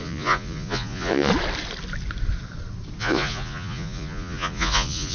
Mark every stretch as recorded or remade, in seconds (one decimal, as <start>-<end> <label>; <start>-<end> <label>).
0.0-1.3 remade; 1.3-3.0 recorded; 3.0-5.1 remade